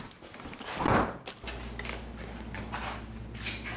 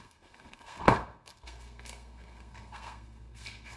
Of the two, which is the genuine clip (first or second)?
first